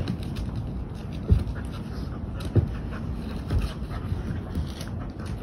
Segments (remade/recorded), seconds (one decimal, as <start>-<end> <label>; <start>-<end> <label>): 0.0-5.4 recorded